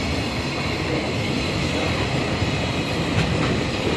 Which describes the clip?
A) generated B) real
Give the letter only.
B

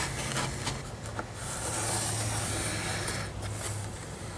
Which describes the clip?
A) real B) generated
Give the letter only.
A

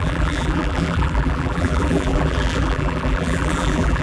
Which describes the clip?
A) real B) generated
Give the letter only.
B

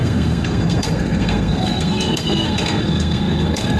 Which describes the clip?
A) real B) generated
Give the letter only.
B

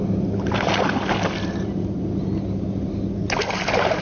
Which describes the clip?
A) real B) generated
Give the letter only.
A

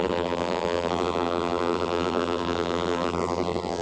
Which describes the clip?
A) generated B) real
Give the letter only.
A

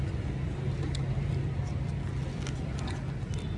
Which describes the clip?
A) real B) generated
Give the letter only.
A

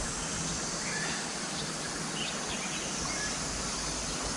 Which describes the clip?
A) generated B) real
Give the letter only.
B